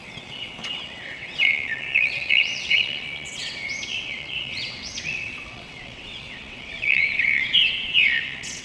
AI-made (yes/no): yes